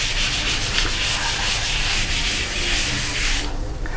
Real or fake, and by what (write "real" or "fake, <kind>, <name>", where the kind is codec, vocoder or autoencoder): real